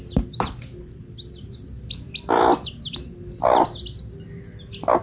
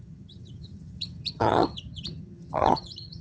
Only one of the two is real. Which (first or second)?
first